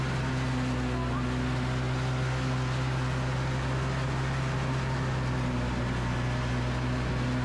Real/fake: real